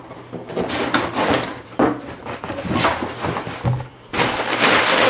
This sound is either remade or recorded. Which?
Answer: recorded